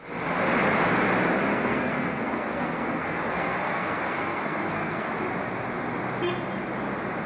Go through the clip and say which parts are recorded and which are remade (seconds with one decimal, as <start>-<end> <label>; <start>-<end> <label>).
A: 0.0-1.5 recorded; 1.5-5.1 remade; 5.1-7.3 recorded